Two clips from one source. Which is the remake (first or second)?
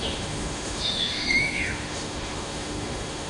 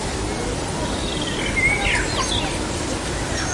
first